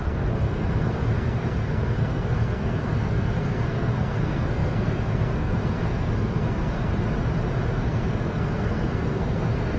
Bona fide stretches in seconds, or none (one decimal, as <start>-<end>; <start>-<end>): 6.9-7.7